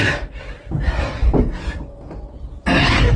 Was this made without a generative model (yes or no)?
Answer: yes